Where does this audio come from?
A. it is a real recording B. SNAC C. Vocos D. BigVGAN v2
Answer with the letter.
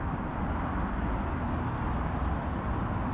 A